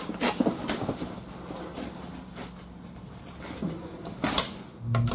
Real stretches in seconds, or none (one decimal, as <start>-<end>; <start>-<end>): 0.0-1.7; 2.4-3.6; 4.1-5.1